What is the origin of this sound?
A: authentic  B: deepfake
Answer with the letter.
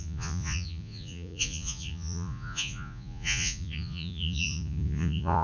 B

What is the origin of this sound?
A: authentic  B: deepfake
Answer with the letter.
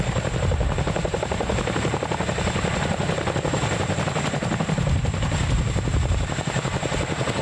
A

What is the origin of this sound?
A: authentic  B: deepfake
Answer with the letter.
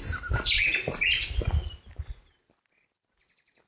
A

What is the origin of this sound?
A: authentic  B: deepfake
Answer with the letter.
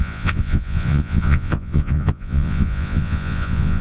B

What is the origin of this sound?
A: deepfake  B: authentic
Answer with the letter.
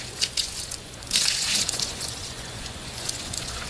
A